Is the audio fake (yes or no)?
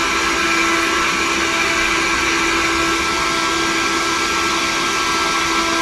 no